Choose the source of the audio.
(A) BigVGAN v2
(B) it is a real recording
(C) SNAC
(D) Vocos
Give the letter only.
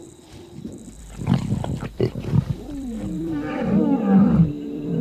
A